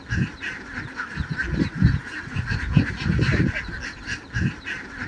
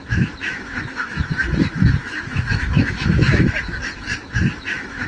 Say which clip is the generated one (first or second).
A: second